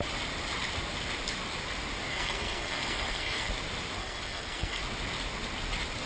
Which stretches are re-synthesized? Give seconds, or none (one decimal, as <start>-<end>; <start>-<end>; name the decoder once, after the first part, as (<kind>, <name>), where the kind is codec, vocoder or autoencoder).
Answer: 2.1-3.5 (codec, SNAC); 4.0-4.8